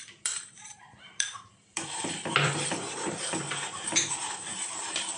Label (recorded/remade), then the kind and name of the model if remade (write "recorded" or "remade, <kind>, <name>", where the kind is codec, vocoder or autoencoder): remade, vocoder, BigVGAN v2